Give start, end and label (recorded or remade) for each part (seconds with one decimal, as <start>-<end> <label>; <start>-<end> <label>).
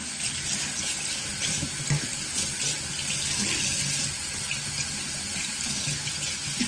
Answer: 0.0-6.7 recorded